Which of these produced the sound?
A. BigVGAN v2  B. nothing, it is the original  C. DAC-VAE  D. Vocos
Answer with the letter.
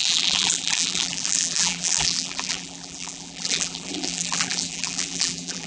A